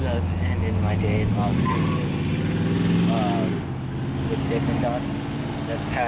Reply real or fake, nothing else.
real